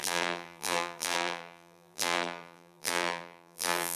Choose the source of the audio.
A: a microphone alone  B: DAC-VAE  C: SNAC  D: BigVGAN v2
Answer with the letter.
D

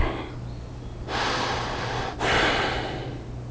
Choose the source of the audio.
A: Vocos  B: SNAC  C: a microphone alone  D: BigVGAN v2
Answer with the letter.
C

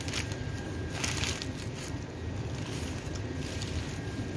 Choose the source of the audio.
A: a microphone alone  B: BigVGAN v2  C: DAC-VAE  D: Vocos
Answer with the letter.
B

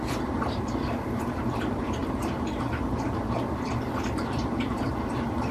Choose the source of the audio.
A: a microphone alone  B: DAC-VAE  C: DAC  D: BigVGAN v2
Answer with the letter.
D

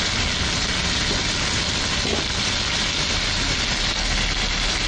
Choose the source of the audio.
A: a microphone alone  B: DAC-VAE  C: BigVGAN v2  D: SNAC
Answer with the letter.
A